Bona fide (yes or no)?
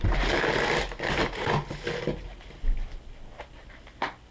yes